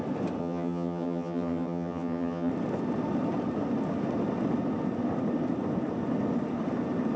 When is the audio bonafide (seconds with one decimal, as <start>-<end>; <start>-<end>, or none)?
0.0-0.4; 2.5-7.2